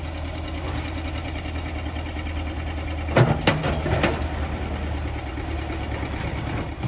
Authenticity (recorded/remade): recorded